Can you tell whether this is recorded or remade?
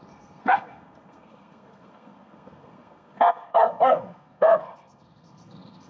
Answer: remade